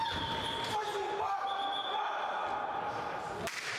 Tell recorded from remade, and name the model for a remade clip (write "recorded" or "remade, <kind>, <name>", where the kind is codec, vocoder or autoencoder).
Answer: remade, vocoder, BigVGAN v2